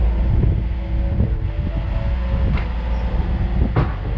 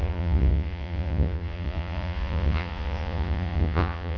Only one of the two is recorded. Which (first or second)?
first